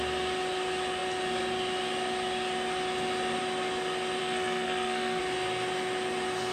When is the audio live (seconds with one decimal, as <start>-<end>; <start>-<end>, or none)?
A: 0.0-4.2; 5.2-6.5